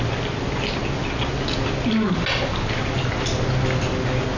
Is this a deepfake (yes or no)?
no